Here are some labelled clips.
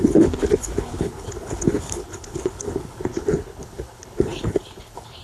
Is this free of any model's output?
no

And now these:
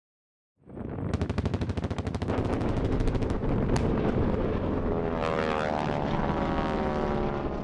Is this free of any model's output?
yes